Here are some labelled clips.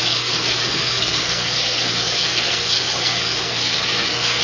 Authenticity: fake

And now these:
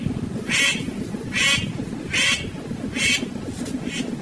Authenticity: real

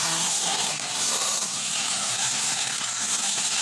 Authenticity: fake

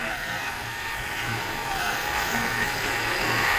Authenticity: fake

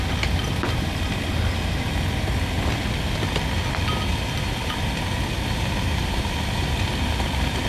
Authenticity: real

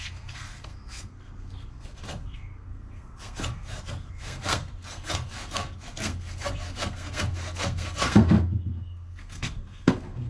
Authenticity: fake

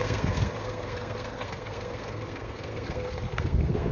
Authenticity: fake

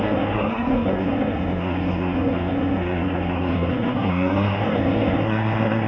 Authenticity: fake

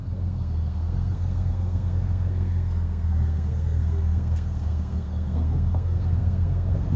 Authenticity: fake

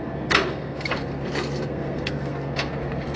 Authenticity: fake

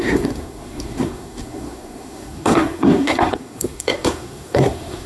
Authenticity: fake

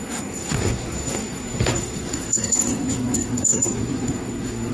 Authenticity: fake